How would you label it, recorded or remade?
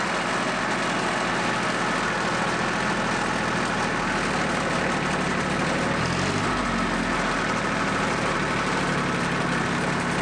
recorded